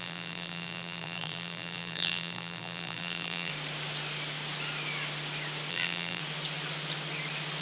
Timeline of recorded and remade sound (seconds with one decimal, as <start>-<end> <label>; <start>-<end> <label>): 0.0-3.5 remade; 3.5-5.7 recorded; 5.7-6.2 remade; 6.2-7.6 recorded